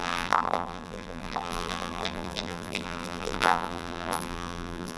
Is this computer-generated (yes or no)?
yes